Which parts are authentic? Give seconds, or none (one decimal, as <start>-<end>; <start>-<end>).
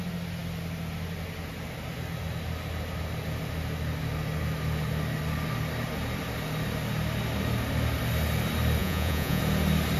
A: 0.0-8.8; 9.4-10.0